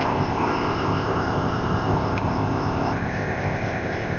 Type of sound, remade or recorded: remade